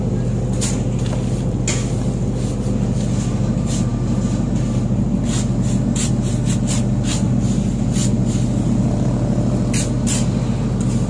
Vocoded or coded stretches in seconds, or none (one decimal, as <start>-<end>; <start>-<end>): none